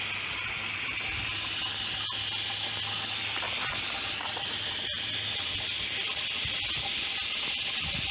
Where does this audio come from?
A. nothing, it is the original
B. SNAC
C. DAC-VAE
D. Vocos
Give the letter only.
A